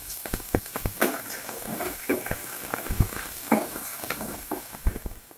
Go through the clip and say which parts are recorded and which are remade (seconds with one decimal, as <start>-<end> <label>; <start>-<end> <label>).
0.0-5.4 remade